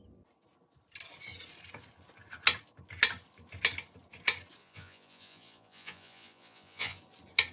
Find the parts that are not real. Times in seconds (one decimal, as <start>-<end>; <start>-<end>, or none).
4.6-7.0